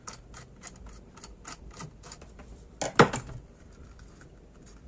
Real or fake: real